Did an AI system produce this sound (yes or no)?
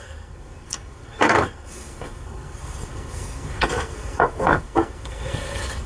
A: yes